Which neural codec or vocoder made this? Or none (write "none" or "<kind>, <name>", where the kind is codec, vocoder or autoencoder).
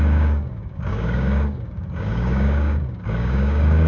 codec, DAC